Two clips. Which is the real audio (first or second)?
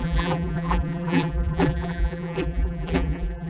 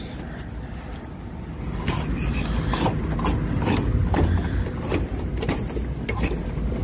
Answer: second